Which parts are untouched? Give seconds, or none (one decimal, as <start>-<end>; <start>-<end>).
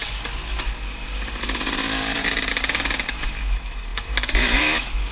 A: 0.0-3.1